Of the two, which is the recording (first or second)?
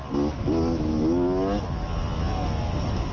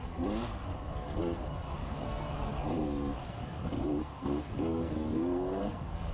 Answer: first